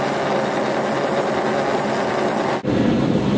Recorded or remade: recorded